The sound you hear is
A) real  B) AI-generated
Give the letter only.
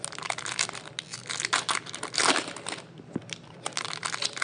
A